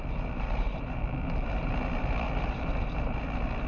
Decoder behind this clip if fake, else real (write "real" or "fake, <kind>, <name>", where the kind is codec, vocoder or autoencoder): fake, vocoder, BigVGAN v2